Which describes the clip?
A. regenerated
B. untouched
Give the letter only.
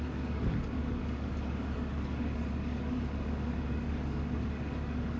A